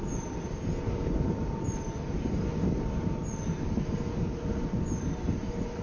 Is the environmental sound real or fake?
real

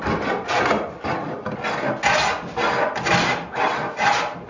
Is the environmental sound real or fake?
real